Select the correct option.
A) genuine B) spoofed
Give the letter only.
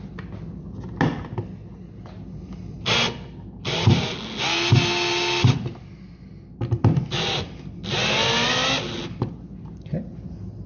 A